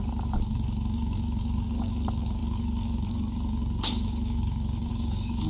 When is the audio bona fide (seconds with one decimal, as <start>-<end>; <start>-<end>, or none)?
none

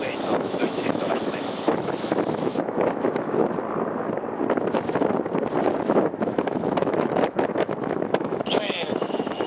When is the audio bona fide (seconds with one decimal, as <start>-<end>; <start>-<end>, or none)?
3.4-6.0

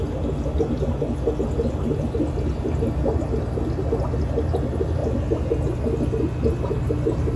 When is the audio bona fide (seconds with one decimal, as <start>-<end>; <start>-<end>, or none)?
0.0-7.4

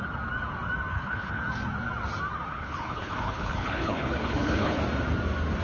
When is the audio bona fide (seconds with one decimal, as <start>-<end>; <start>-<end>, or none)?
0.0-0.9; 1.4-2.5; 4.8-5.6

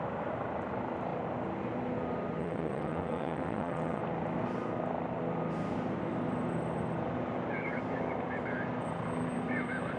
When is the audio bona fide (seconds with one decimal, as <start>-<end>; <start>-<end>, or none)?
0.0-2.4; 4.0-10.0

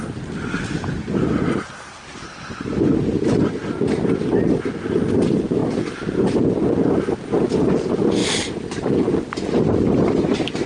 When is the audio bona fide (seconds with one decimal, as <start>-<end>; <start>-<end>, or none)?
0.0-10.7

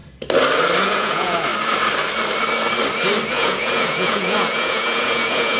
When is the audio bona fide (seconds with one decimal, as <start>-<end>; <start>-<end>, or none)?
0.0-0.8; 1.5-3.3